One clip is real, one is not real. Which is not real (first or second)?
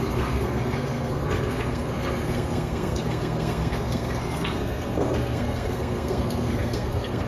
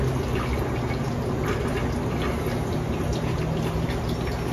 first